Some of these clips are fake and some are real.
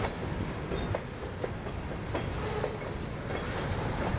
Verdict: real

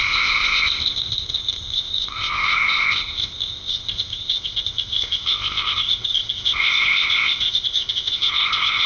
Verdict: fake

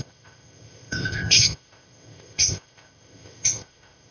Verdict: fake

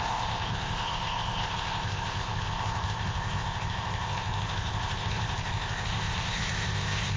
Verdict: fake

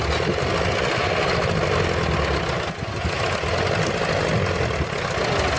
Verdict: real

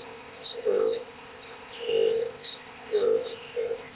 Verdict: fake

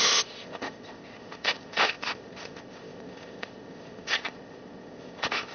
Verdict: fake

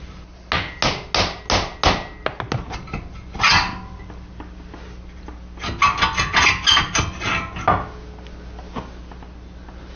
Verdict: real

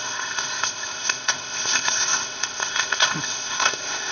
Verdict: fake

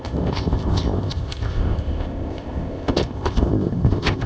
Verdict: fake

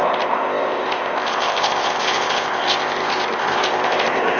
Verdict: fake